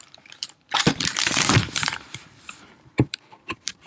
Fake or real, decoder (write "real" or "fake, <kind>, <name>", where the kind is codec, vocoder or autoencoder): fake, vocoder, BigVGAN v2